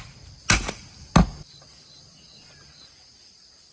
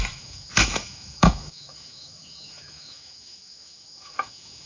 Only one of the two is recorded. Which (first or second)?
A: first